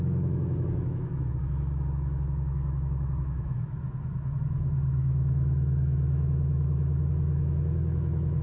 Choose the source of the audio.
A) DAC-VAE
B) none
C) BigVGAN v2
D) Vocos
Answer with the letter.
A